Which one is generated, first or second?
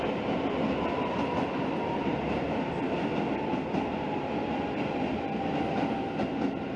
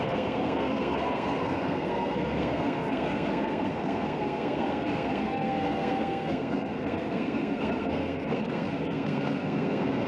second